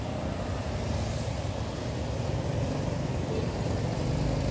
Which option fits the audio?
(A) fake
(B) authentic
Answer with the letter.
B